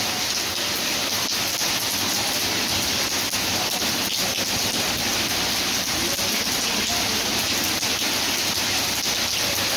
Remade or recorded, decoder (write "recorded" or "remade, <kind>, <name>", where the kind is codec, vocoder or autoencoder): recorded